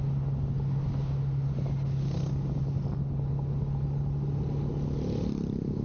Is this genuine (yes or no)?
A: yes